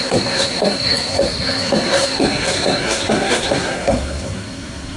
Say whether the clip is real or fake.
fake